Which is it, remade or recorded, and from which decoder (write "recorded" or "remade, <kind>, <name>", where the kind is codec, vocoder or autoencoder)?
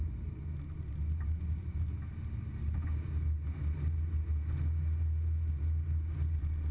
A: recorded